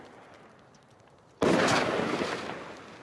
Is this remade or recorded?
remade